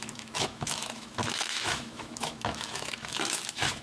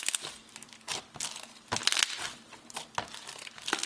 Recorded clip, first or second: second